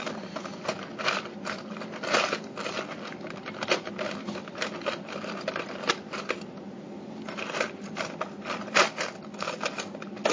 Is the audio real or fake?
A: real